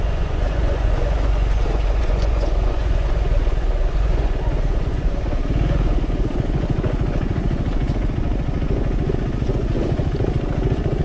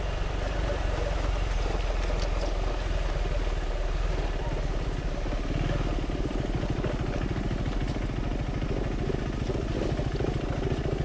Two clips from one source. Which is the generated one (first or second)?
first